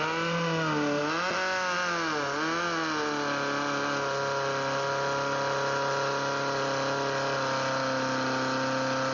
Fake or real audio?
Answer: real